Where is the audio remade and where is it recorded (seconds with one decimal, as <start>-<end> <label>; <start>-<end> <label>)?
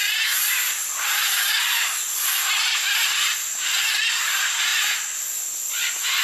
0.0-0.7 recorded; 0.7-6.2 remade